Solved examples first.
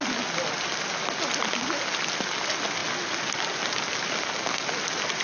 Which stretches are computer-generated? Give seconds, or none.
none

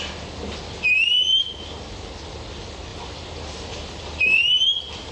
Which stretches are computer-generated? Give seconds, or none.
2.9-4.5

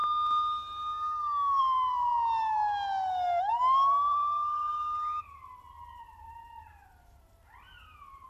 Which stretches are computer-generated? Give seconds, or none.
1.6-2.1; 3.5-4.2; 5.2-8.3

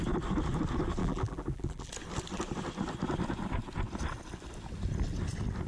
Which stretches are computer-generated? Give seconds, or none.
1.0-1.9